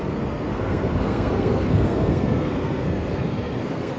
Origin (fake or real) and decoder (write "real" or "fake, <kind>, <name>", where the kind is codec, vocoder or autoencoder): fake, codec, SNAC